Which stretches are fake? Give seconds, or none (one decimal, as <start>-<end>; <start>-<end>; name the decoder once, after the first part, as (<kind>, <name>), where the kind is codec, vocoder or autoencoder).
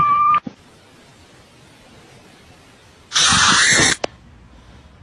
none